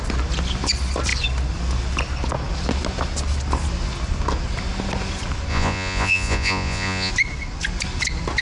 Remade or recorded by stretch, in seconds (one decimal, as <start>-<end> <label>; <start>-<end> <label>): 0.0-5.5 recorded; 5.5-7.1 remade; 7.1-8.4 recorded